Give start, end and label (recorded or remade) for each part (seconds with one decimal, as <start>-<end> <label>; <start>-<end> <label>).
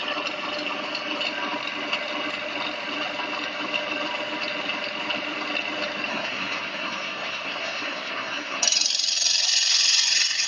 0.0-6.1 recorded; 6.1-8.6 remade; 8.6-10.5 recorded